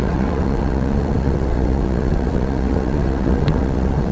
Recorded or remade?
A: remade